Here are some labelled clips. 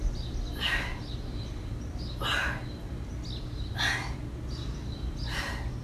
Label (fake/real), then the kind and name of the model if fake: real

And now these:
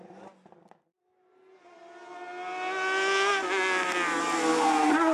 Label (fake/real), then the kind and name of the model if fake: real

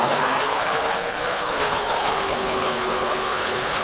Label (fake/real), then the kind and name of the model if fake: fake, codec, HILCodec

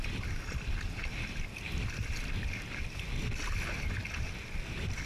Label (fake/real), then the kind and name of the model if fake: real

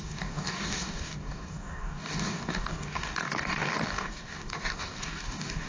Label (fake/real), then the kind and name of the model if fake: fake, codec, DAC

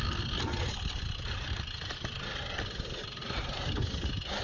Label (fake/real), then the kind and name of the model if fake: real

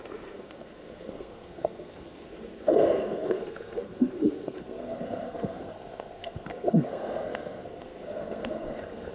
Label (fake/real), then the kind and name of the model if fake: fake, codec, SNAC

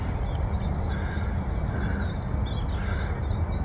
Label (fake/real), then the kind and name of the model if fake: real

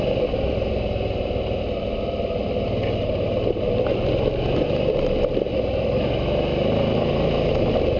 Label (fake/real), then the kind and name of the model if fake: real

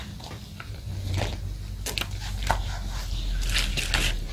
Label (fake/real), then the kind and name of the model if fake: real